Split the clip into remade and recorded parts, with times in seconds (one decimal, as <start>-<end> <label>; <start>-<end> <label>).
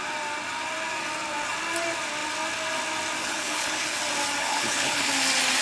0.0-3.2 recorded; 3.2-4.0 remade; 4.0-4.4 recorded; 4.4-5.1 remade; 5.1-5.6 recorded